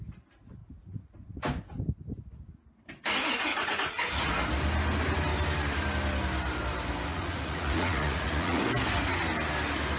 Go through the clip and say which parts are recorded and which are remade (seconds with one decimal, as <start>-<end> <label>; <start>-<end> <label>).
0.0-0.6 recorded; 0.6-1.4 remade; 1.4-3.5 recorded; 3.5-4.3 remade; 4.3-7.1 recorded; 7.1-8.6 remade; 8.6-10.0 recorded